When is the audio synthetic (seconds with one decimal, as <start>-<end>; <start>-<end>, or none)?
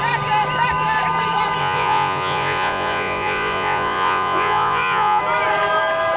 1.6-5.2